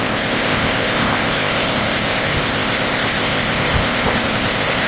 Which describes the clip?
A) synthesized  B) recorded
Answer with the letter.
A